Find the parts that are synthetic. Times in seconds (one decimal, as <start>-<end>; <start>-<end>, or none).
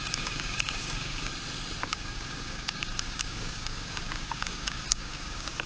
0.0-1.3; 1.8-5.7